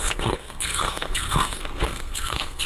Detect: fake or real fake